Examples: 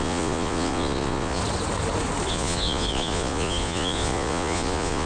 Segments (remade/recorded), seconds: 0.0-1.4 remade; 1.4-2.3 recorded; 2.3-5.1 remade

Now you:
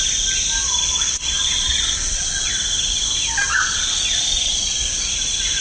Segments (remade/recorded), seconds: 0.0-0.6 recorded; 0.6-2.5 remade; 2.5-3.5 recorded; 3.5-5.0 remade; 5.0-5.6 recorded